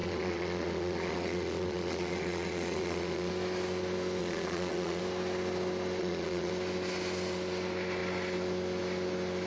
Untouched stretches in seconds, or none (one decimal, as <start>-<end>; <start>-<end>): 3.3-4.2; 5.0-6.0; 6.5-9.5